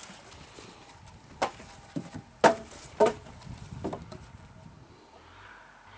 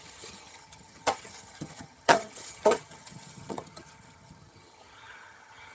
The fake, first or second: second